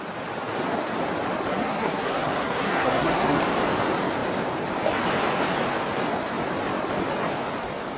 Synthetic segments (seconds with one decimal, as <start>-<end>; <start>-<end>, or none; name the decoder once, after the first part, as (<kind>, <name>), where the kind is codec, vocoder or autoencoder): 1.5-3.4 (codec, SNAC)